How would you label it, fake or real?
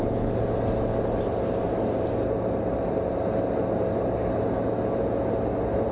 real